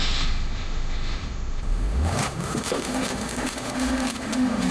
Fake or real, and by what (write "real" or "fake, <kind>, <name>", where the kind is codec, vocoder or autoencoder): fake, autoencoder, DAC-VAE